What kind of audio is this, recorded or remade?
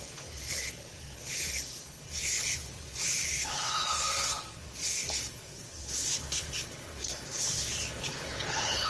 remade